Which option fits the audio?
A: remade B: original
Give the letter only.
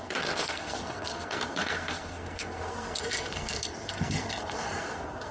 A